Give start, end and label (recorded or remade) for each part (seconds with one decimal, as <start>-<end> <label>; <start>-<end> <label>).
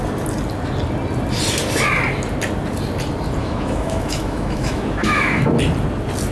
0.0-3.4 recorded; 3.4-5.6 remade; 5.6-6.3 recorded